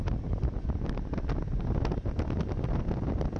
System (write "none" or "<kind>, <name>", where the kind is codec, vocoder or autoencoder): none